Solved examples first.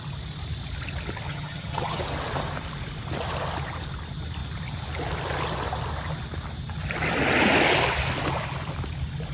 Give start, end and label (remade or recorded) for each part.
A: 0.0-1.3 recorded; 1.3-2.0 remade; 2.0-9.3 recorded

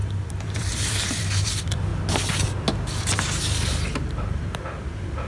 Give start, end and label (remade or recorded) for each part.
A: 0.0-1.9 remade; 1.9-5.3 recorded